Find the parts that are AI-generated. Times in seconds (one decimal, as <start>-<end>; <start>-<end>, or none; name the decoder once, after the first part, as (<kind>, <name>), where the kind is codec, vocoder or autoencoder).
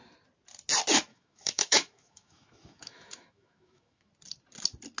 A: 1.1-4.1 (autoencoder, DAC-VAE)